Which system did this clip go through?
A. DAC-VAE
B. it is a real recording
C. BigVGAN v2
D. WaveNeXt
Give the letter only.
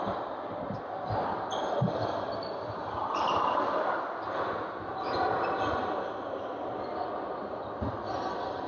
B